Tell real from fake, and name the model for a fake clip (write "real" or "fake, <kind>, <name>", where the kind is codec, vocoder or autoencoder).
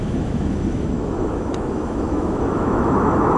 fake, autoencoder, DAC-VAE